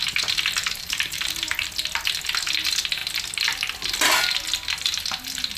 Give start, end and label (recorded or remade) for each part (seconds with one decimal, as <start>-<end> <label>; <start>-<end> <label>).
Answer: 0.0-0.6 recorded; 0.6-1.7 remade; 1.7-5.6 recorded